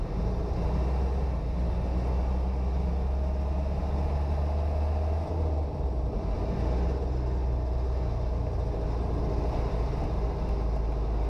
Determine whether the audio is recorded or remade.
recorded